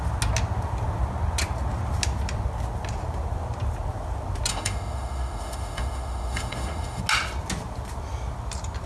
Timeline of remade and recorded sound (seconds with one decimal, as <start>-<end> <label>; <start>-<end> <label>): 0.0-4.5 recorded; 4.5-7.0 remade; 7.0-8.9 recorded